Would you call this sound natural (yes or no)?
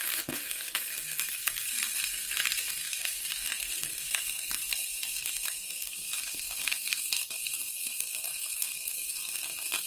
no